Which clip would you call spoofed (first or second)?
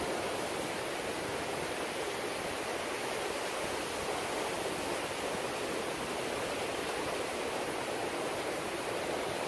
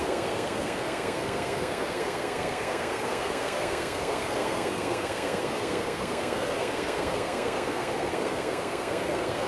second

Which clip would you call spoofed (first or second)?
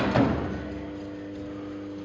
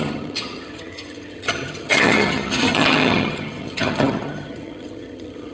second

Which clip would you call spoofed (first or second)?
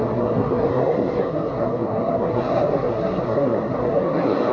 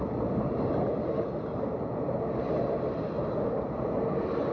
first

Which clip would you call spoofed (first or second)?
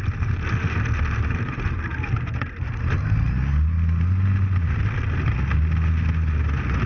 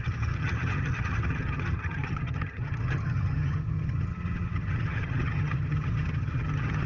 second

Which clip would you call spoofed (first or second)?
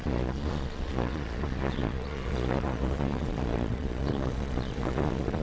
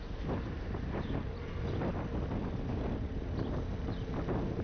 first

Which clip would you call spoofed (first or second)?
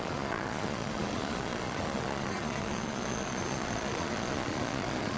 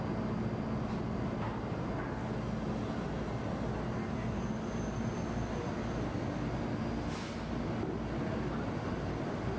first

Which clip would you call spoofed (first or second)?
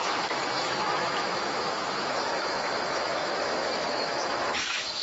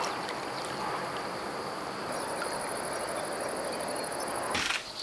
first